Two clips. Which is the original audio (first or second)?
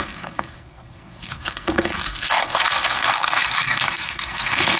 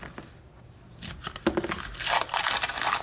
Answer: second